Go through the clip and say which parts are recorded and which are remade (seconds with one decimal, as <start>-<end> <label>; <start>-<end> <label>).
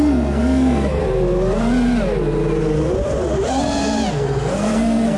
0.0-1.0 remade; 1.0-4.1 recorded; 4.1-5.2 remade